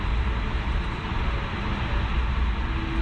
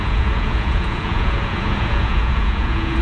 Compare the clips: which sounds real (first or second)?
first